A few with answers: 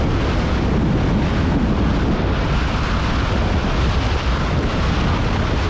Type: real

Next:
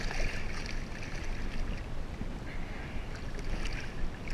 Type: real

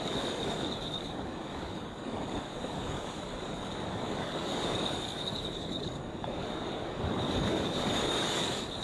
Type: fake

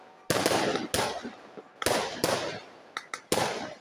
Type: real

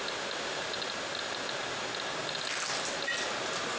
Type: real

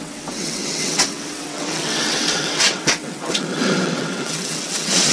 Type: fake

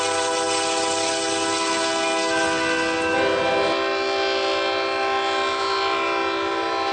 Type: real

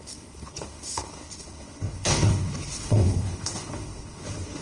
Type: fake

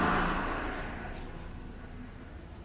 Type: real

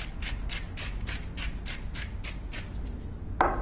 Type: real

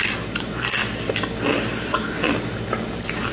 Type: real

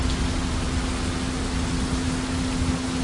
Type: real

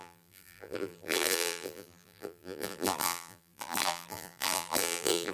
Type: fake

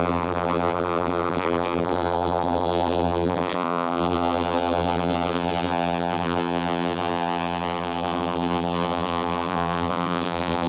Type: fake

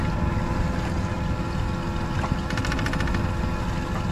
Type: real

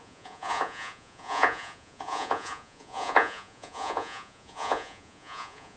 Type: fake